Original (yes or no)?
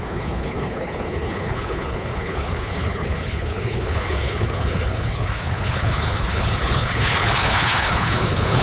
no